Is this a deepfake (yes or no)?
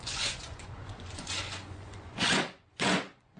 yes